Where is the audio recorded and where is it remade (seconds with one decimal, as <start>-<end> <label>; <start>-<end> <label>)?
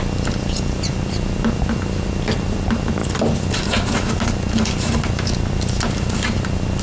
0.0-6.8 recorded